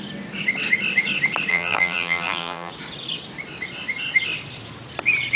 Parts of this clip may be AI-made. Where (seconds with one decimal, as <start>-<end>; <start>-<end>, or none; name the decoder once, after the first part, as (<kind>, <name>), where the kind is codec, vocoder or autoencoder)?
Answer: 1.5-2.7 (vocoder, BigVGAN v2)